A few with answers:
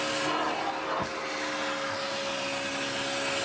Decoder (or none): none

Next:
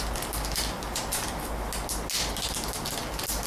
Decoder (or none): none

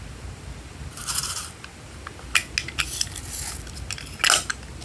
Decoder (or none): none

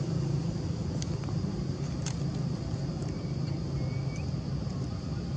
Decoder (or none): none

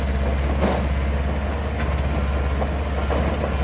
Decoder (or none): none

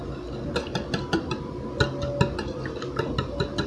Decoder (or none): none